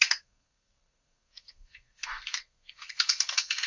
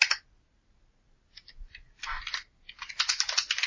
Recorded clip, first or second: second